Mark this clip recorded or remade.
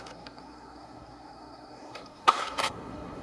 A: remade